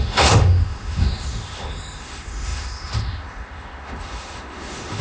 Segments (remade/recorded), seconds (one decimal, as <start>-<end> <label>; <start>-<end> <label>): 0.0-5.0 remade